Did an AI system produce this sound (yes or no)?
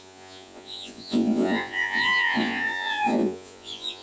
yes